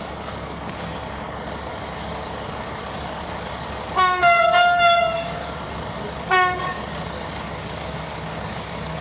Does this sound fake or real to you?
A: fake